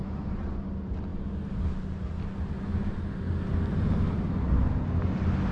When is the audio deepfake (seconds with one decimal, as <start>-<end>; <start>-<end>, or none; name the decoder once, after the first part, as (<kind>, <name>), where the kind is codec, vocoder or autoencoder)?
none